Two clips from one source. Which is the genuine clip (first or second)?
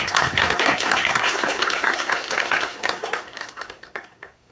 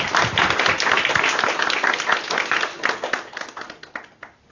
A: second